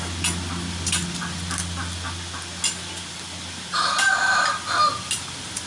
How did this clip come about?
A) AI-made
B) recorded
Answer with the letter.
B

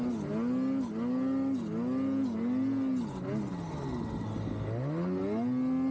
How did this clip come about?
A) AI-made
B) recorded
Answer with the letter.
B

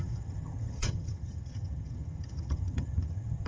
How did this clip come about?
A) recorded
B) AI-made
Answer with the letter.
B